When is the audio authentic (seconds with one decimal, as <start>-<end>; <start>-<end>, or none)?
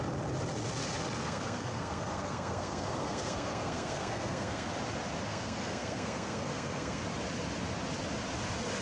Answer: 0.0-1.2; 4.7-5.3; 7.0-8.8